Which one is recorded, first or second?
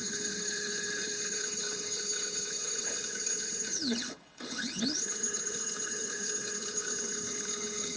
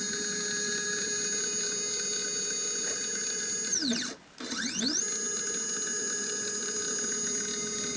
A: second